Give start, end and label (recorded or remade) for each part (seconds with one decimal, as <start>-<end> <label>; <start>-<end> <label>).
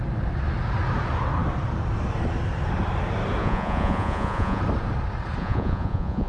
0.0-3.4 recorded; 3.4-4.6 remade; 4.6-5.4 recorded; 5.4-6.3 remade